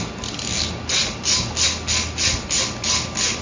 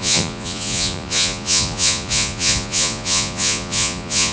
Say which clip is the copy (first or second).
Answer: second